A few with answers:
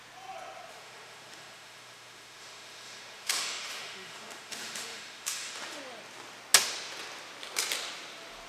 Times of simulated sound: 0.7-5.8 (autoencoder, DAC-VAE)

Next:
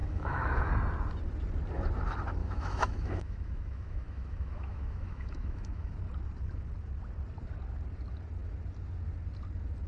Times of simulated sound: 0.0-0.7 (autoencoder, DAC-VAE); 2.4-6.0

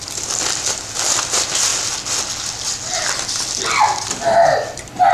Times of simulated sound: none

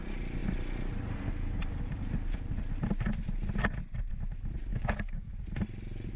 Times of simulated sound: 4.7-5.3 (codec, DAC)

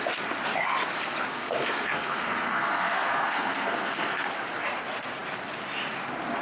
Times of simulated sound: 1.3-4.3 (codec, SNAC)

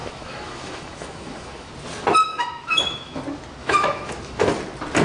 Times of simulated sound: 0.0-1.7 (autoencoder, DAC-VAE); 2.3-3.2; 3.6-4.4